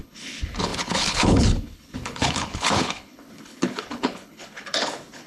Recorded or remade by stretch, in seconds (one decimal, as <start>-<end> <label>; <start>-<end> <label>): 0.0-5.3 remade